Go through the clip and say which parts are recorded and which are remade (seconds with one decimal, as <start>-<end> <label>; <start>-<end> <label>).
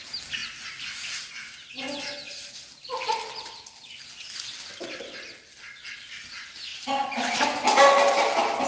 0.0-8.7 recorded